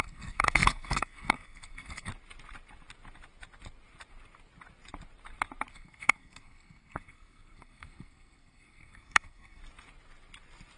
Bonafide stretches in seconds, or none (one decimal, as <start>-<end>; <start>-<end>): 2.1-5.7; 9.6-10.8